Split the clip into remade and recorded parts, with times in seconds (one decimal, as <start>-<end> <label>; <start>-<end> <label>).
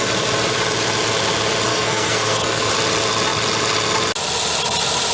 0.0-1.7 recorded; 1.7-2.7 remade; 2.7-5.1 recorded